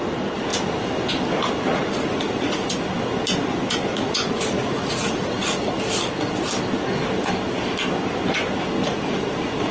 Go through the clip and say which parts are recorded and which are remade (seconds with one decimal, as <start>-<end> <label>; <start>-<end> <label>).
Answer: 0.0-1.7 recorded; 1.7-2.6 remade; 2.6-3.9 recorded; 3.9-5.7 remade; 5.7-8.8 recorded; 8.8-9.7 remade